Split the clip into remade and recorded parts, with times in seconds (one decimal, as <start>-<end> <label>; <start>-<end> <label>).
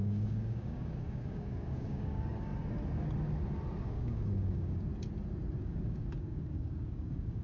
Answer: 0.0-2.5 remade; 2.5-3.8 recorded; 3.8-4.9 remade; 4.9-5.6 recorded; 5.6-7.4 remade